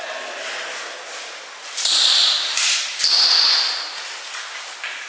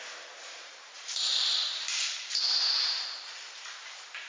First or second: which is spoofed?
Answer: second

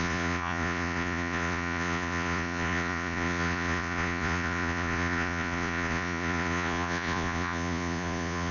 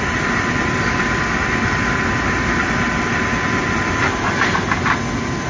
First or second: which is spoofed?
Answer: first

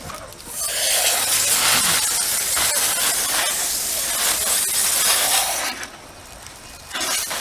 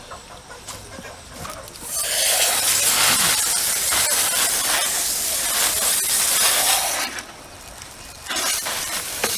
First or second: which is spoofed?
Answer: second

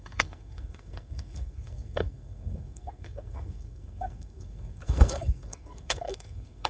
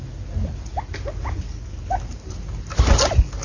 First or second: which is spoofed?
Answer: first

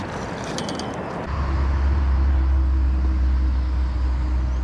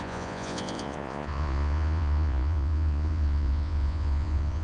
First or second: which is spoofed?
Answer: second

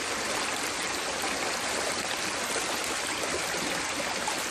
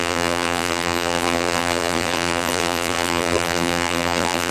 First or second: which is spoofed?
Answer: second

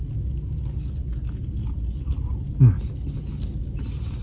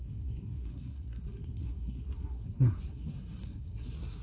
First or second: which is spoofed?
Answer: second